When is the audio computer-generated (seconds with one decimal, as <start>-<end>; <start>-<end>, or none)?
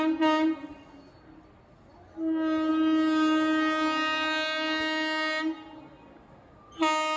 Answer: none